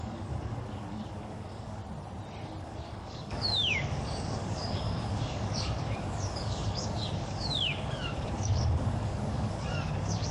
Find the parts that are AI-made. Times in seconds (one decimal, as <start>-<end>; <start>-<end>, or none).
0.0-1.8; 2.6-10.3